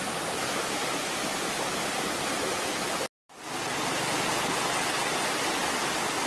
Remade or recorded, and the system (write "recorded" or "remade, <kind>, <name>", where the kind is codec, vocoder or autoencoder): recorded